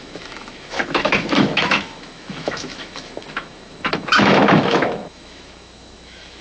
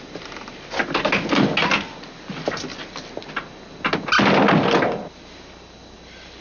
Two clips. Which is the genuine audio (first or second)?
second